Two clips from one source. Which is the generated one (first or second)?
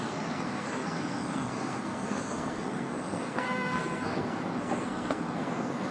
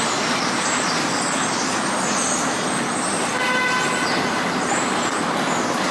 first